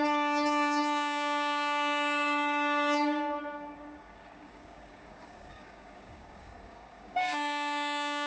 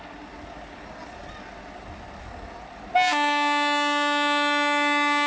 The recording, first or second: second